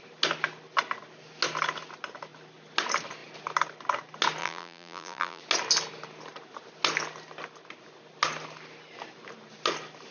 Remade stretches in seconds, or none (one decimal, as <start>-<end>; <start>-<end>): 4.4-5.4